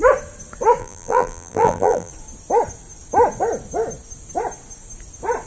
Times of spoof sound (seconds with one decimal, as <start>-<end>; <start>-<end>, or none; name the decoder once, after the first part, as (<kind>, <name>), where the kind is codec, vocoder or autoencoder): 0.8-2.1 (vocoder, BigVGAN v2)